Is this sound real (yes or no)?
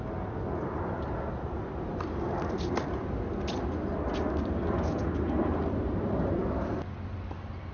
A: yes